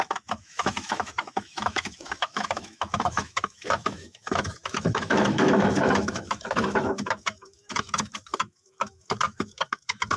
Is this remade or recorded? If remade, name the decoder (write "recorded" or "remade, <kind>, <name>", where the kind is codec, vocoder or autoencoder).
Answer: remade, autoencoder, DAC-VAE